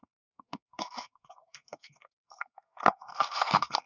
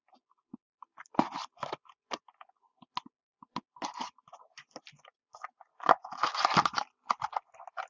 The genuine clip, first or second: second